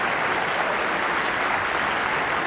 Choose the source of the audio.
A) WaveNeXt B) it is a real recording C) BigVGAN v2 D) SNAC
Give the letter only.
B